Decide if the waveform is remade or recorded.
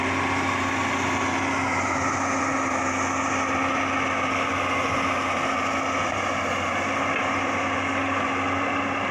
recorded